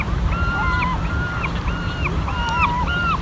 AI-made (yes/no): no